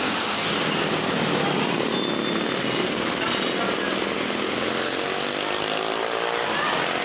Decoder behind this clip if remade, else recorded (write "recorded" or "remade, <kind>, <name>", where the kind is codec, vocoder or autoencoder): recorded